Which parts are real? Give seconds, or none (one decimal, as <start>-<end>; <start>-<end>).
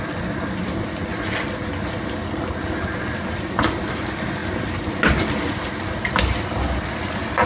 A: 0.0-7.5